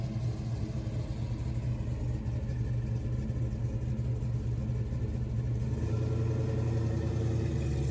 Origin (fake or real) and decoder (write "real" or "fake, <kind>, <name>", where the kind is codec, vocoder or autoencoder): real